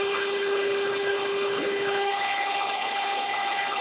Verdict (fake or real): fake